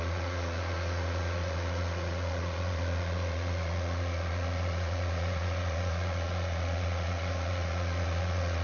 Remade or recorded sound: remade